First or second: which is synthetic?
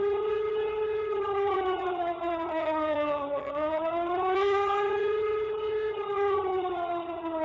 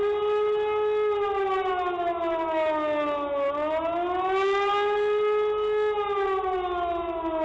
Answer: first